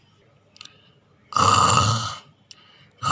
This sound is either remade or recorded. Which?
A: recorded